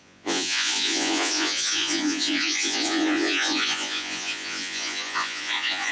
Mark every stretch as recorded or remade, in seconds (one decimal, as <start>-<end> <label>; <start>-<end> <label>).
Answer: 0.0-5.9 remade